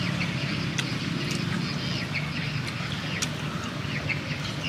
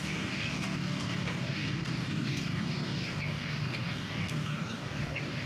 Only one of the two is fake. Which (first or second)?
second